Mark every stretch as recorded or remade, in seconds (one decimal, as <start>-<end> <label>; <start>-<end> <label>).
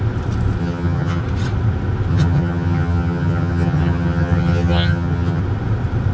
0.0-0.6 recorded; 0.6-1.2 remade; 1.2-2.1 recorded; 2.1-5.4 remade; 5.4-6.1 recorded